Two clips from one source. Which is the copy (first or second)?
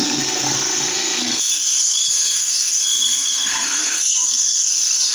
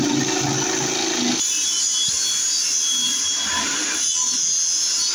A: first